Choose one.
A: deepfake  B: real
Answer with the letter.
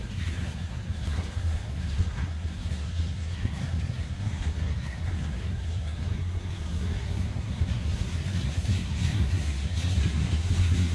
A